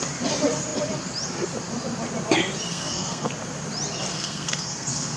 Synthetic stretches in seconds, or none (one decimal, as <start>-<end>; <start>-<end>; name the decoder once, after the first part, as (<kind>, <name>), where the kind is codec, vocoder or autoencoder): 2.7-3.3 (codec, SNAC); 4.1-5.2

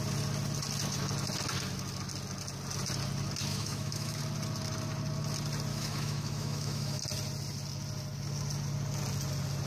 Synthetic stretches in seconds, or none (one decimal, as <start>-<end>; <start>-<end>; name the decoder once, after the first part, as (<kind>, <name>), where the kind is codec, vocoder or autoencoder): 3.5-4.2 (autoencoder, DAC-VAE); 5.7-7.0

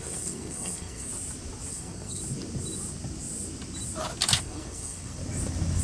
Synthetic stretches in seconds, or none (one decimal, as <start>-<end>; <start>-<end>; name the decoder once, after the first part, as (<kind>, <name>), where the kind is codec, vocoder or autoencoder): 0.0-1.1 (codec, SNAC); 1.7-2.2; 4.4-5.2

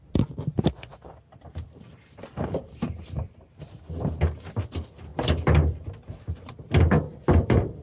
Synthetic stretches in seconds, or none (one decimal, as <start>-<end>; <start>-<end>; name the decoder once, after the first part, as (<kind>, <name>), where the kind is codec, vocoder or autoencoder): 0.9-3.6 (vocoder, BigVGAN v2); 5.1-6.5; 7.1-7.8

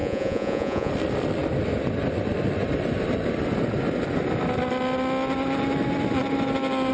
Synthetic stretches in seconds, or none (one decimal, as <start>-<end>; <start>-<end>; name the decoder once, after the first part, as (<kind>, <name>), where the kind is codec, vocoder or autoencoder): 0.0-0.9 (vocoder, Vocos)

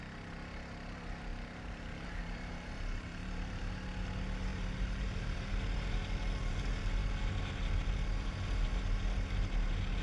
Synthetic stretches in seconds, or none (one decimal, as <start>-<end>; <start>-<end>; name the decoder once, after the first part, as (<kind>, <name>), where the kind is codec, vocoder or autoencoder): 1.3-3.6 (vocoder, BigVGAN v2); 4.5-5.5

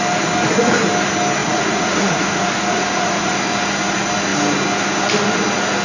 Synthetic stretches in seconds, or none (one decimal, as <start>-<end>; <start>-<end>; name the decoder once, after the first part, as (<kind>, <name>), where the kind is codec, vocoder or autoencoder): 1.4-3.3 (vocoder, Vocos)